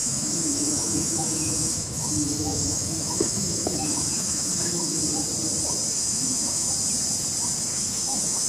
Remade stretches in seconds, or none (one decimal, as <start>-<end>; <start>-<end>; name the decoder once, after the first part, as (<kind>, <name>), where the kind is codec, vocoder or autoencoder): 0.0-5.0 (autoencoder, DAC-VAE); 5.9-6.7; 7.7-8.5